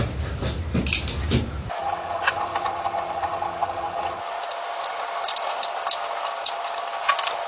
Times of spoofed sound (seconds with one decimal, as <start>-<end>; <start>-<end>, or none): 1.8-4.2